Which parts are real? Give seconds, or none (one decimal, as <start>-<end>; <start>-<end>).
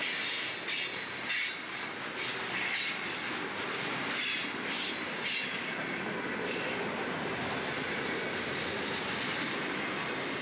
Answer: 0.0-10.4